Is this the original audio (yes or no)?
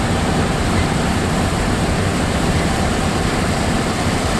no